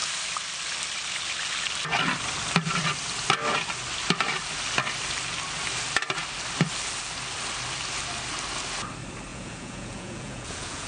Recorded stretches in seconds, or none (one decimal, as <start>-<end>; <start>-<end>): 0.0-9.3